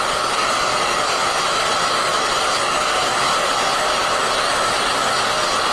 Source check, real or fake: real